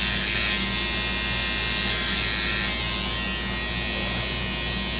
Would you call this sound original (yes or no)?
yes